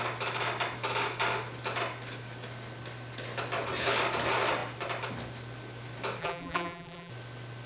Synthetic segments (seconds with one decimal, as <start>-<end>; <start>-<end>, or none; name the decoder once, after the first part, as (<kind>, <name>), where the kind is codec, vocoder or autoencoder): 6.2-7.1 (vocoder, BigVGAN v2)